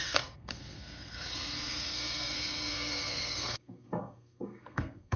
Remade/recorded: remade